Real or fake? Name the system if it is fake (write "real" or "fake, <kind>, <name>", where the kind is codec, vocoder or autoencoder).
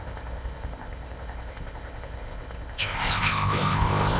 fake, codec, ZipCodec